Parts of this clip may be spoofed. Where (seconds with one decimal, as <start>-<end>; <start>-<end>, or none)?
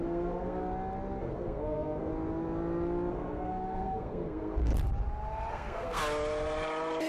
0.0-0.6; 1.2-2.1; 3.1-4.7; 5.5-6.0